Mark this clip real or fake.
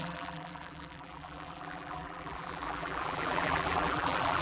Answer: fake